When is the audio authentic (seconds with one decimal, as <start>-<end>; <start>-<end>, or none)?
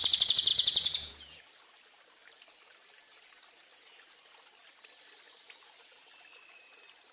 0.0-0.5; 1.4-7.1